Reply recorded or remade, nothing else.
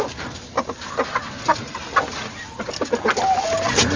recorded